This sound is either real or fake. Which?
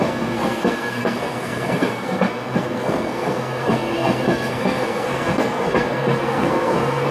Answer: fake